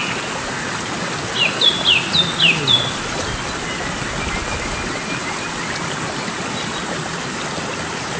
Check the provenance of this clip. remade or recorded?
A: recorded